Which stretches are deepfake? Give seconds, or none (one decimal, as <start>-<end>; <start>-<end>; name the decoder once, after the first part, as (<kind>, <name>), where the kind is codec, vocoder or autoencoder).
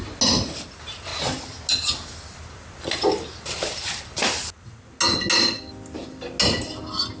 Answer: none